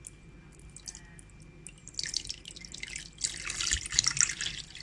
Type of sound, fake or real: real